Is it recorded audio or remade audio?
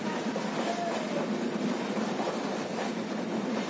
recorded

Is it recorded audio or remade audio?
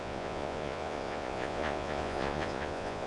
remade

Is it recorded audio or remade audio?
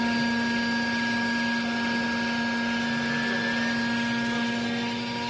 recorded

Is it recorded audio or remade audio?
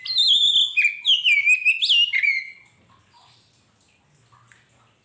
recorded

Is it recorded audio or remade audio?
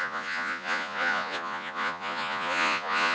remade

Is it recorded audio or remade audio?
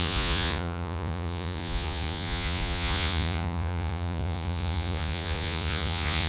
remade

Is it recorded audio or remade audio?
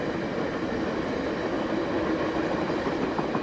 recorded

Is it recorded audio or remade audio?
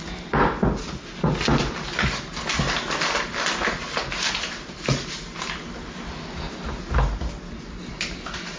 recorded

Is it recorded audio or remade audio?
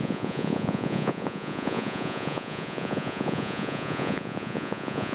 remade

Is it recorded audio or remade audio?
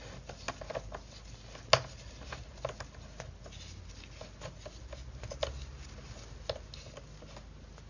recorded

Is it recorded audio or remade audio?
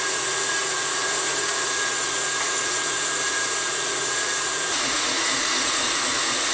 remade